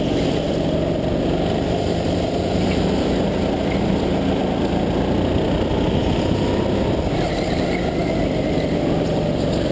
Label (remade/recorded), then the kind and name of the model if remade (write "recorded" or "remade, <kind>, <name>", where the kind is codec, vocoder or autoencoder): recorded